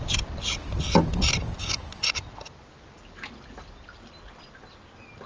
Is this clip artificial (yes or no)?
no